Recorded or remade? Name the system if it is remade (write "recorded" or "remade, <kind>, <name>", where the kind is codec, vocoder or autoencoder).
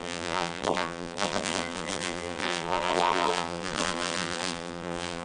remade, vocoder, BigVGAN v2